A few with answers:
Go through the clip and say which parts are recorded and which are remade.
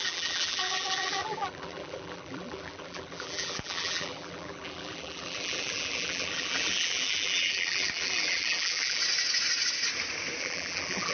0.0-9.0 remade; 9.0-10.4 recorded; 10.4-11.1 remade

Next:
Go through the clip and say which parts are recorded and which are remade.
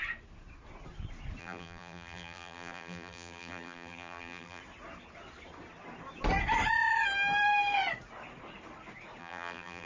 0.0-1.4 recorded; 1.4-4.6 remade; 4.6-9.2 recorded; 9.2-9.9 remade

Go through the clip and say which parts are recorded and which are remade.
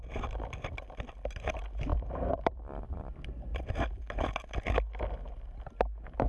0.0-1.9 recorded; 1.9-3.1 remade; 3.1-3.5 recorded; 3.5-4.2 remade; 4.2-6.3 recorded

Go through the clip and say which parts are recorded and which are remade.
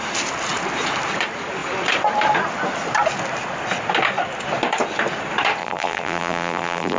0.0-5.6 recorded; 5.6-7.0 remade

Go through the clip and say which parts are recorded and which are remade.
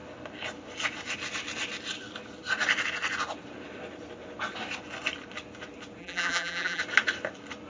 0.0-6.0 recorded; 6.0-6.8 remade; 6.8-7.7 recorded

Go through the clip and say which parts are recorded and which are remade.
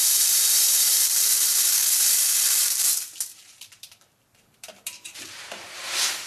0.0-1.8 remade; 1.8-2.4 recorded; 2.4-6.3 remade